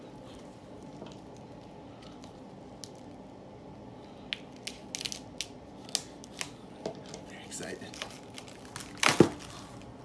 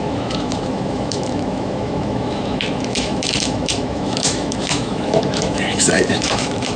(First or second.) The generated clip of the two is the second